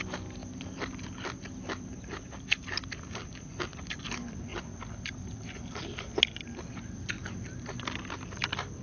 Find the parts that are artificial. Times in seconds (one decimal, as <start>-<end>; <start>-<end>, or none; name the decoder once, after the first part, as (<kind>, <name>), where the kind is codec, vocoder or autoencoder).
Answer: none